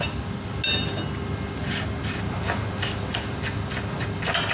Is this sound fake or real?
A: real